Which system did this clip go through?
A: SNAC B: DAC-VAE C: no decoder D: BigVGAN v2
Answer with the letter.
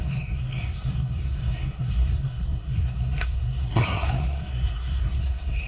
A